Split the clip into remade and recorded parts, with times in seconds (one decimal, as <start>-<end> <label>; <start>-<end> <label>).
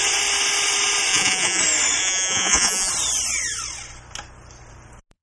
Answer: 0.0-1.1 recorded; 1.1-1.6 remade; 1.6-2.0 recorded; 2.0-2.9 remade; 2.9-5.2 recorded